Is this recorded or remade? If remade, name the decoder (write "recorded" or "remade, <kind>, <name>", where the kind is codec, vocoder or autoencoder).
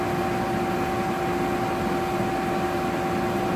recorded